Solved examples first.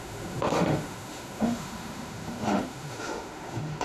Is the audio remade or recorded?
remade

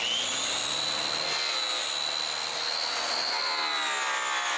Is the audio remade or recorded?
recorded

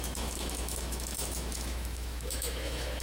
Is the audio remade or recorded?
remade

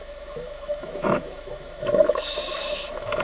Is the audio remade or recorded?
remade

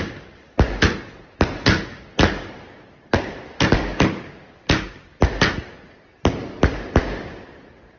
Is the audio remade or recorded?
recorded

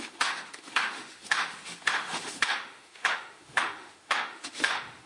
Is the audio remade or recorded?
remade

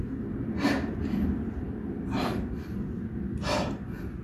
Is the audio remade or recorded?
recorded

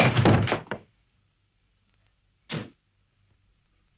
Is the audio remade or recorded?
recorded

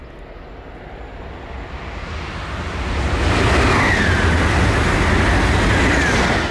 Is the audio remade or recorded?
recorded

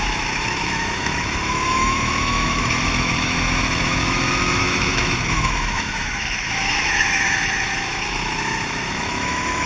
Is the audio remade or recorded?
remade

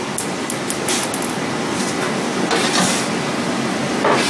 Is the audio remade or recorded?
recorded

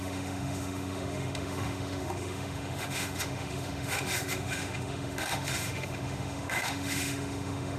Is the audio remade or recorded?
remade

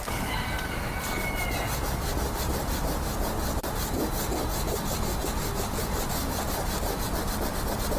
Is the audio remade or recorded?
recorded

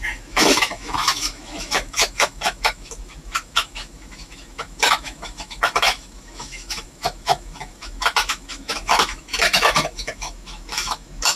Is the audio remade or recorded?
remade